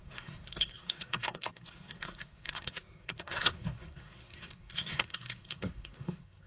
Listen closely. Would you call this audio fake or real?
fake